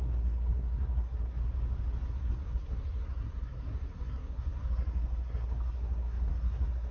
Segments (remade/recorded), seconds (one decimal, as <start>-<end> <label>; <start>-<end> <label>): 0.0-1.4 remade; 1.4-2.1 recorded; 2.1-6.9 remade